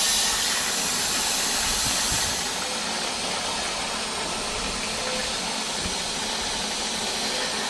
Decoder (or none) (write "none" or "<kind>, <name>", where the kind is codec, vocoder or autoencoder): none